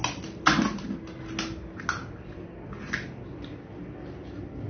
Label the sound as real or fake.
real